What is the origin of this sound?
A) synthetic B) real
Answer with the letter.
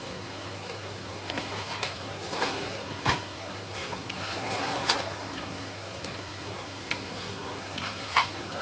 A